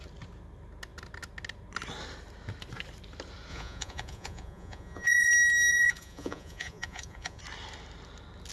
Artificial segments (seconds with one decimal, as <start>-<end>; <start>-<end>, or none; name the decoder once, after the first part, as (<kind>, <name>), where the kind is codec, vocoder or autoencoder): 3.5-5.3 (vocoder, Vocos); 5.7-7.4